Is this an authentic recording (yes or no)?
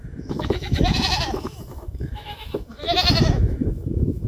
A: no